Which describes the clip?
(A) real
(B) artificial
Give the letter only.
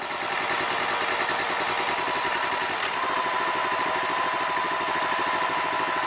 A